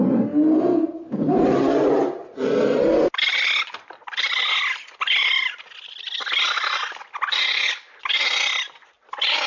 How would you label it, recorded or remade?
recorded